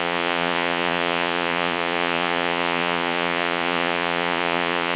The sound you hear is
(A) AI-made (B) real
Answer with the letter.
A